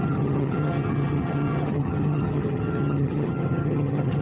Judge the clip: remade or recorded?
remade